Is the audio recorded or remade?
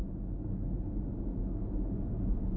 recorded